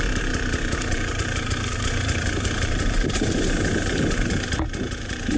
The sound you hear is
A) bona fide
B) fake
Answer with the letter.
B